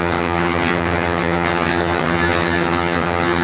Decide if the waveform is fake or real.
fake